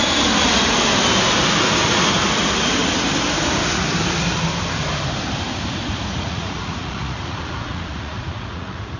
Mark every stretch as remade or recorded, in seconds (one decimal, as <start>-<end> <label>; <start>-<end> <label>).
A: 0.0-6.1 recorded; 6.1-9.0 remade